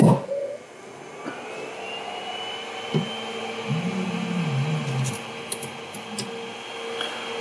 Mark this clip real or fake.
real